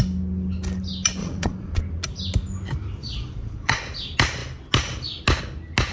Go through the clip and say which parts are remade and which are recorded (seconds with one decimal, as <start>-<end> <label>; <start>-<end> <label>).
0.0-1.2 recorded; 1.2-1.8 remade; 1.8-3.0 recorded; 3.0-3.8 remade; 3.8-5.9 recorded